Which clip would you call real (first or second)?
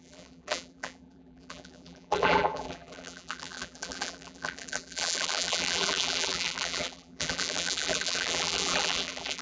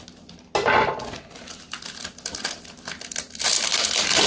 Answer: second